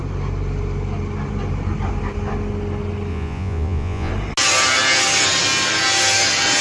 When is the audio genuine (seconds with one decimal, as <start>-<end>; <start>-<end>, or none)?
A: 0.0-3.1; 4.1-6.6